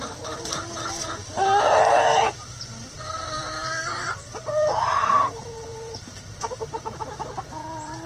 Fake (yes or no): yes